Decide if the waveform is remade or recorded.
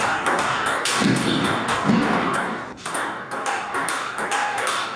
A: remade